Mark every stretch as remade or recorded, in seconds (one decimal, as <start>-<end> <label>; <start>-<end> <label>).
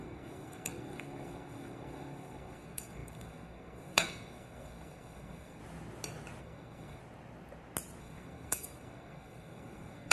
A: 0.0-5.6 remade; 5.6-6.4 recorded; 6.4-7.0 remade; 7.0-8.0 recorded; 8.0-10.1 remade